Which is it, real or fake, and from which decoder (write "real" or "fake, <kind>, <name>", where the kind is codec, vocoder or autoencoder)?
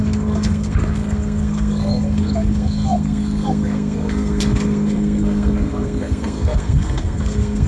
fake, codec, SNAC